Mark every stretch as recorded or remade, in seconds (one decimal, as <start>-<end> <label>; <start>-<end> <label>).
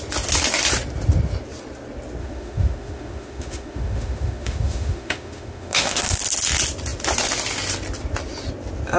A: 0.0-2.2 recorded; 2.2-6.2 remade; 6.2-9.0 recorded